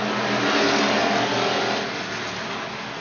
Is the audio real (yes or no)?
yes